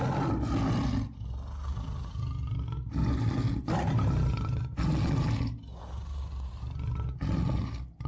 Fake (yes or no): no